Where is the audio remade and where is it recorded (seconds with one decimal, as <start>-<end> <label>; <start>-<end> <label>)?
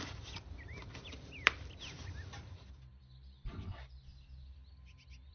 0.0-4.1 remade; 4.1-5.3 recorded